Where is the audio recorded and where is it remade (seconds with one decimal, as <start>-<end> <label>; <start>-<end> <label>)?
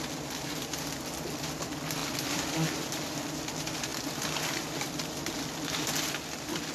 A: 0.0-6.7 recorded